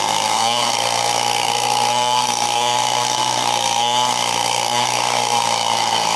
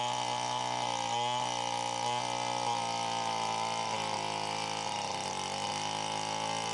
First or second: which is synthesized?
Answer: first